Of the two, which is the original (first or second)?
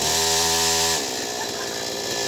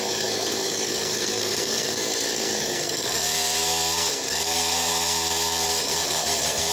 first